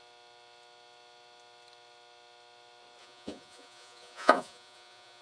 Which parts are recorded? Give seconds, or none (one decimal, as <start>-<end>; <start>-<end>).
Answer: 0.0-3.0